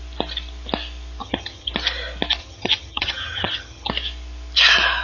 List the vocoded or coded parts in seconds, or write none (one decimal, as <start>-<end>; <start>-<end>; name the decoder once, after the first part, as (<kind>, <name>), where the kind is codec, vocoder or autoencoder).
1.2-1.7 (vocoder, HiFi-GAN); 2.4-3.9